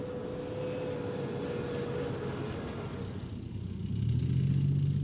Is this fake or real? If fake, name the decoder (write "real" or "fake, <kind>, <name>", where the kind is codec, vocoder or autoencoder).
real